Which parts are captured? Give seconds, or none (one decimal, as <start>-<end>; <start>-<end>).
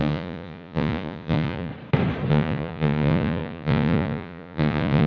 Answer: 1.7-2.3